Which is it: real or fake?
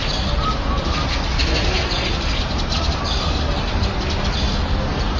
real